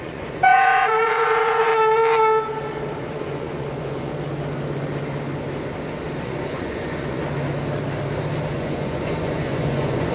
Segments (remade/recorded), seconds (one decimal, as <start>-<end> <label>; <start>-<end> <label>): 0.0-1.7 remade; 1.7-3.0 recorded; 3.0-4.1 remade; 4.1-6.2 recorded; 6.2-7.2 remade; 7.2-8.5 recorded; 8.5-10.1 remade